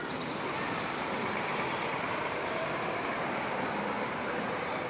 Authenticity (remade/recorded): remade